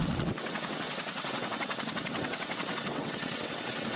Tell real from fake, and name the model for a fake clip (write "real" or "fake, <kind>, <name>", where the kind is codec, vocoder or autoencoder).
fake, vocoder, WaveNeXt